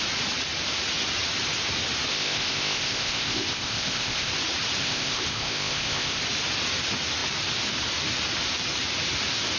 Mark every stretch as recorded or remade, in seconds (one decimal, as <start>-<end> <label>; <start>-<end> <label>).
0.0-2.1 recorded; 2.1-4.3 remade; 4.3-4.8 recorded; 4.8-6.2 remade; 6.2-9.6 recorded